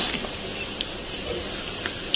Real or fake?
real